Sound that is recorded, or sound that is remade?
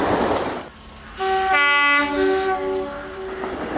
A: recorded